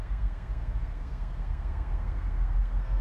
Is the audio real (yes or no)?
no